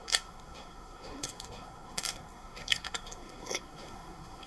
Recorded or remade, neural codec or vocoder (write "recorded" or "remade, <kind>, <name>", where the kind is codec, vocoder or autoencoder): remade, codec, SNAC